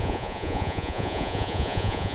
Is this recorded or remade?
remade